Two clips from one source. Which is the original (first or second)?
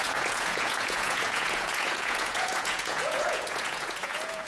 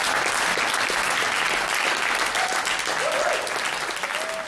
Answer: second